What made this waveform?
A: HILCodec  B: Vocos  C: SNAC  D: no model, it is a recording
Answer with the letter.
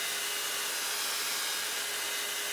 D